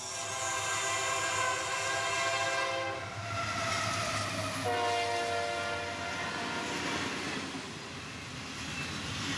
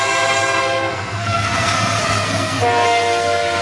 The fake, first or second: second